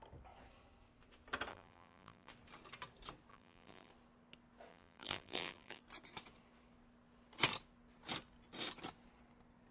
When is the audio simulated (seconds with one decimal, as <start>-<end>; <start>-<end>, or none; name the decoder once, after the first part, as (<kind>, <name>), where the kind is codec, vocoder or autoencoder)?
1.5-2.3 (vocoder, BigVGAN v2); 3.3-3.9; 4.7-5.8

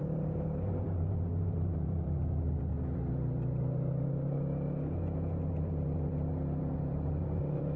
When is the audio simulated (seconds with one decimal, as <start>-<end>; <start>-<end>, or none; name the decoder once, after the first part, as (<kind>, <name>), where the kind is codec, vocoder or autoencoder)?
0.0-2.7 (vocoder, BigVGAN v2); 6.6-7.8

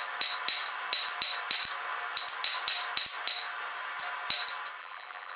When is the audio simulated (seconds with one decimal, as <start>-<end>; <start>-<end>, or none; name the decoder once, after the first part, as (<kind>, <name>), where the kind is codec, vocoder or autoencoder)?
4.8-5.4 (vocoder, BigVGAN v2)

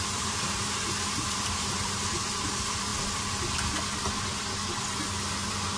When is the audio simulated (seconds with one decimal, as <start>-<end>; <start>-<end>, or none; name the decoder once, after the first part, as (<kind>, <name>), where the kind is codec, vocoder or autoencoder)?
0.0-2.9 (vocoder, BigVGAN v2)

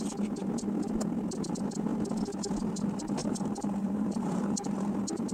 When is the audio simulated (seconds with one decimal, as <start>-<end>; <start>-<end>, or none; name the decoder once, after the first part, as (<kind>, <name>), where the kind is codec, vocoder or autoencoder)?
3.2-5.3 (vocoder, BigVGAN v2)

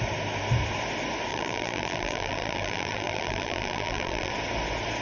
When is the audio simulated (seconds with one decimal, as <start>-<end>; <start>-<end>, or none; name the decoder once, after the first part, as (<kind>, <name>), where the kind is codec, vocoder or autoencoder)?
1.3-4.3 (vocoder, BigVGAN v2)

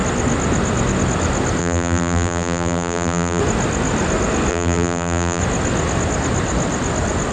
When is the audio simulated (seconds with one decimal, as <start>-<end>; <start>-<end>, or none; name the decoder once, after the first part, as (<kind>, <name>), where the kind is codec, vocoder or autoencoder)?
1.6-3.4 (vocoder, BigVGAN v2); 4.5-5.4